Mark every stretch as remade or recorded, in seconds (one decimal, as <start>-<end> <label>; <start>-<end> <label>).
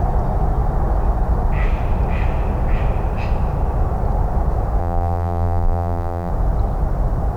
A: 0.0-4.8 recorded; 4.8-6.3 remade; 6.3-7.4 recorded